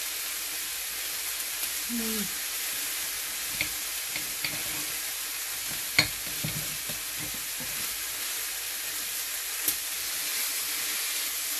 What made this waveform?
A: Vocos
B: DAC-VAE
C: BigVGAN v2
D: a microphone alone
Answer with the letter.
D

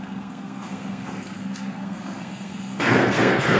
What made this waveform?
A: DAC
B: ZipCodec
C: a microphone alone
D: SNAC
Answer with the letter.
D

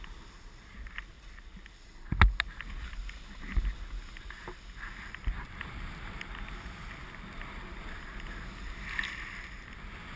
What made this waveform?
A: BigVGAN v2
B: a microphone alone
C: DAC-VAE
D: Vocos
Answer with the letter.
B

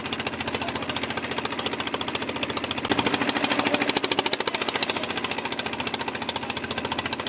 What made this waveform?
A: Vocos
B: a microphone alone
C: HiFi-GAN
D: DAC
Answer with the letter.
B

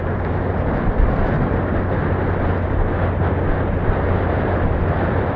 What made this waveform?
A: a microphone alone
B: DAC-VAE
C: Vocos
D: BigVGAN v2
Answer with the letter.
A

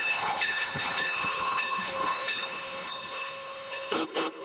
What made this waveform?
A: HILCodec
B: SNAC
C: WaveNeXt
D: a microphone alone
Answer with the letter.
A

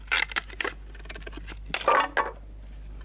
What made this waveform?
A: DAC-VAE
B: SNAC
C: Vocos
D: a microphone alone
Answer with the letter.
D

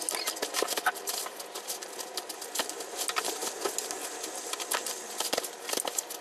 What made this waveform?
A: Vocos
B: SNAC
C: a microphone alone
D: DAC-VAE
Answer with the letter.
C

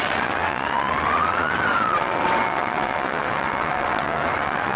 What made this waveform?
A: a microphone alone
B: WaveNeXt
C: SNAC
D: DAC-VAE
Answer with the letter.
B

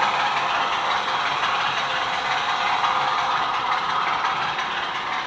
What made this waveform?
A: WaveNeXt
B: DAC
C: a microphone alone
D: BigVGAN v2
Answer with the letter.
D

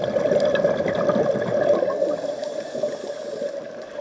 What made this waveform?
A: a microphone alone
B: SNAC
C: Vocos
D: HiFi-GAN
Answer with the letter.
A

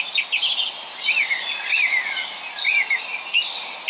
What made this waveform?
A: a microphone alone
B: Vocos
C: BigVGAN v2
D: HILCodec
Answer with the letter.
A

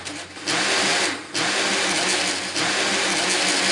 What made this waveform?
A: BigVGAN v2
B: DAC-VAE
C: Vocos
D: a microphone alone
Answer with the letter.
D